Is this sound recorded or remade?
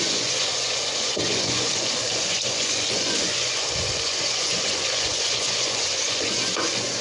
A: remade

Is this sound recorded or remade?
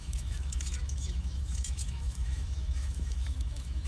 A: remade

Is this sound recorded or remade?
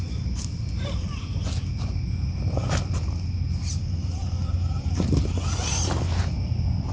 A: recorded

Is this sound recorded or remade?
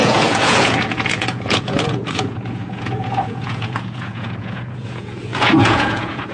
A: remade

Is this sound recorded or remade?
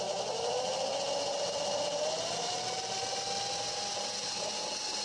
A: recorded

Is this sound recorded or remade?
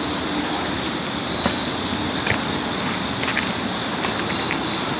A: recorded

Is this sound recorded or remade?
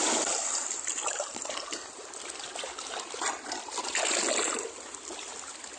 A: recorded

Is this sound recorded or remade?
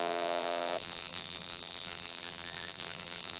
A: remade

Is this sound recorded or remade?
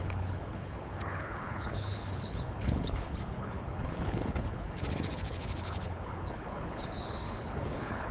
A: remade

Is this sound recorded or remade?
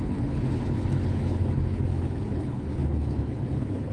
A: remade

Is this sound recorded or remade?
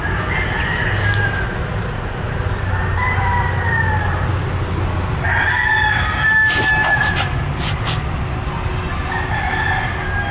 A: recorded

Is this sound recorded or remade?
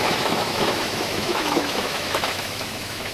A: remade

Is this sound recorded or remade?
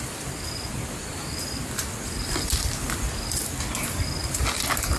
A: recorded